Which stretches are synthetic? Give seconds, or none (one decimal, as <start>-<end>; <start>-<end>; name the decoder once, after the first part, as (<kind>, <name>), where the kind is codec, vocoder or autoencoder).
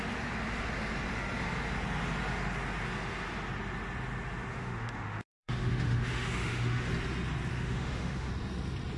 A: 4.5-6.9 (autoencoder, DAC-VAE); 7.5-8.3